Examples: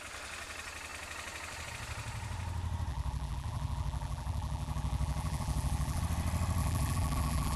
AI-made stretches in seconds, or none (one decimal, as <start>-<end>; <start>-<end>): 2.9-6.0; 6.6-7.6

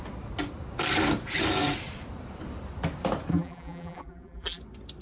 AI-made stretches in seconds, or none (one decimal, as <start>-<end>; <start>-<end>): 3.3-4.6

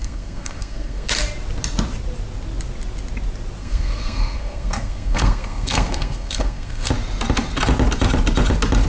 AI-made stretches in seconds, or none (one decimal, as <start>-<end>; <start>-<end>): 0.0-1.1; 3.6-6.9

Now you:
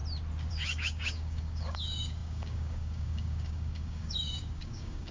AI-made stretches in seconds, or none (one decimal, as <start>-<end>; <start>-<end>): 0.5-5.1